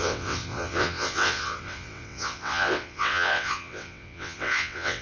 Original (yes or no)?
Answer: no